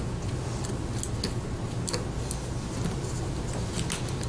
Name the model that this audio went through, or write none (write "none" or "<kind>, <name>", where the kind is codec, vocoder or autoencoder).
none